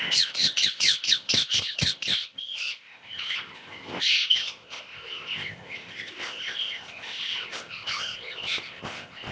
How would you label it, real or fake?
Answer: fake